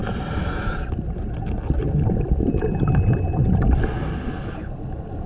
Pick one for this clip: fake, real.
real